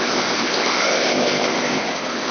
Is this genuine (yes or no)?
no